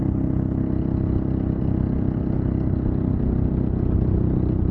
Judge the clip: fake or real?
real